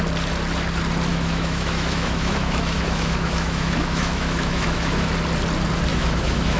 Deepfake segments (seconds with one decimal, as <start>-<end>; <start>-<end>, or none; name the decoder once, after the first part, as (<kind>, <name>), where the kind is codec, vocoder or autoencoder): 1.1-5.1 (autoencoder, DAC-VAE); 5.9-6.6